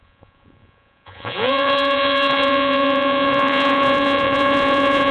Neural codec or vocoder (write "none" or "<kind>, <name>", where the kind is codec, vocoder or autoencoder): vocoder, Vocos